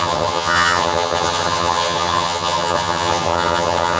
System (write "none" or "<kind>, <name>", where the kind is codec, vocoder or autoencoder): vocoder, HiFi-GAN